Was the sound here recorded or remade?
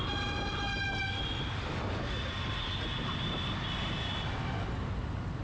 recorded